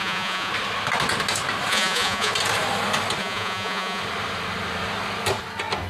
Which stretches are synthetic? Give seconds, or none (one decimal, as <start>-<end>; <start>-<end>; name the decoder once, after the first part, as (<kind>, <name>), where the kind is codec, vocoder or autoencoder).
0.0-0.5 (vocoder, Vocos); 1.7-2.3; 3.2-4.0